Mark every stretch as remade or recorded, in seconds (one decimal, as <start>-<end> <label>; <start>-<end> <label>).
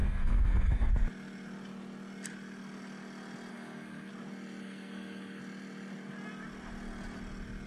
0.0-0.9 remade; 0.9-3.5 recorded; 3.5-4.1 remade; 4.1-4.6 recorded; 4.6-5.4 remade; 5.4-7.7 recorded